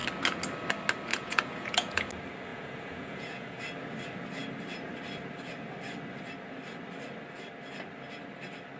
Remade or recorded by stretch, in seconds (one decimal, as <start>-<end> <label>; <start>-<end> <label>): 0.0-1.1 recorded; 1.1-2.1 remade; 2.1-2.5 recorded; 2.5-3.6 remade; 3.6-8.8 recorded